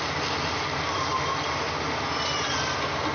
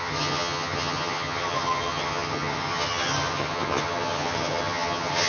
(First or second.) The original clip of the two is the first